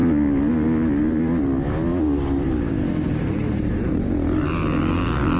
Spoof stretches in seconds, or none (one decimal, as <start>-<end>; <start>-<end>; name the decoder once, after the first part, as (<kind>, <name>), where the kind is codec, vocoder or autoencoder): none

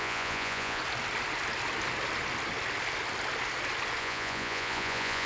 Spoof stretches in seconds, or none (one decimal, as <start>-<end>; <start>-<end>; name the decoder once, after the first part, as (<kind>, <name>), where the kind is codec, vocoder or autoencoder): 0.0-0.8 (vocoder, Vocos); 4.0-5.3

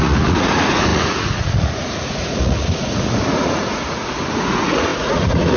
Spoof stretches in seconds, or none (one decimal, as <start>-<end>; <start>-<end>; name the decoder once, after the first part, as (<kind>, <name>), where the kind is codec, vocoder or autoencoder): 0.0-5.6 (vocoder, Vocos)